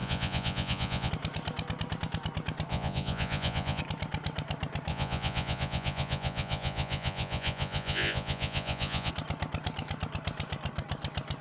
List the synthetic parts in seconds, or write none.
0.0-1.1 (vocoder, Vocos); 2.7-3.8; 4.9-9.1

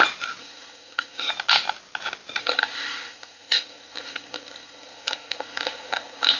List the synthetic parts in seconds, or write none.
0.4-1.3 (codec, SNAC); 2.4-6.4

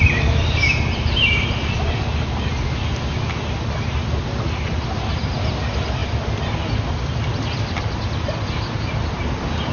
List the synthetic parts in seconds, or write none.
0.0-2.5 (vocoder, BigVGAN v2); 5.1-9.7

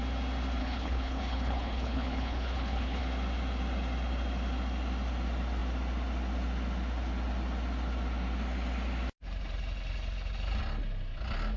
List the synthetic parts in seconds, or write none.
0.6-3.0 (codec, HILCodec)